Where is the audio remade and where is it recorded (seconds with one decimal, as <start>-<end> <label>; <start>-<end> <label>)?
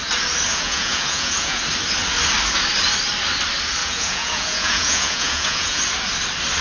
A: 0.0-0.5 recorded; 0.5-1.6 remade; 1.6-3.8 recorded; 3.8-5.8 remade; 5.8-6.6 recorded